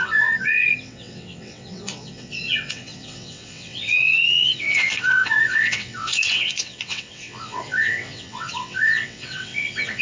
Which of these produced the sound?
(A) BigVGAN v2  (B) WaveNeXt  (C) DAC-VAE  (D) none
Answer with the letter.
B